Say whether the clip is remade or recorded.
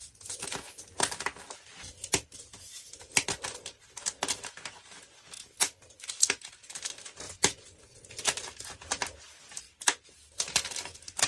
recorded